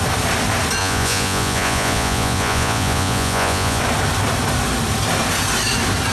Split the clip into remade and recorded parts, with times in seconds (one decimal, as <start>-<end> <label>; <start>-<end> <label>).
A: 0.0-0.8 recorded; 0.8-3.8 remade; 3.8-6.1 recorded